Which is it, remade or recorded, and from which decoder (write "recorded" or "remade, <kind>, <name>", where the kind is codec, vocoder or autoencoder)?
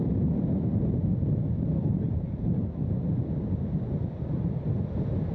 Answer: recorded